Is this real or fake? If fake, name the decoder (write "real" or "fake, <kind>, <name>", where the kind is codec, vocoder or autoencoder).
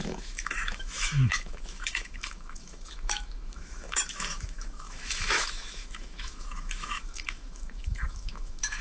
fake, autoencoder, DAC-VAE